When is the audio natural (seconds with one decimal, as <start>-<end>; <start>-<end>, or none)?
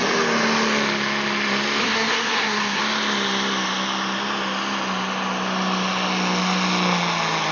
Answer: 0.0-1.8; 2.8-7.5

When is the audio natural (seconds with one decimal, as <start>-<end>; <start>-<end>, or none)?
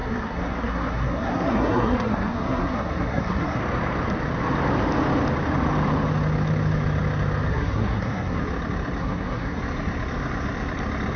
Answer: 3.6-7.5; 8.4-9.0; 9.6-11.2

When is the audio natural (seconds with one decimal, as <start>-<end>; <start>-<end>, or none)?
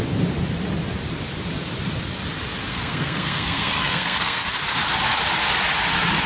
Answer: 0.0-2.6; 4.5-6.3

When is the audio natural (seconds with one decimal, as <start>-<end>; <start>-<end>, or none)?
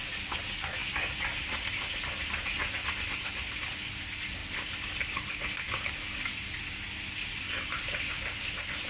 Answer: 0.0-8.9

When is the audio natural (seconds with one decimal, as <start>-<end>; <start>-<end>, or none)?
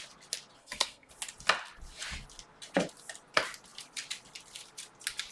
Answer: 0.0-0.6; 1.1-5.3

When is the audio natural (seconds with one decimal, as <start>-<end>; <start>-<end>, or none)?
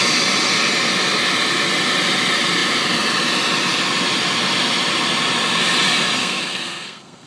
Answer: 0.0-6.2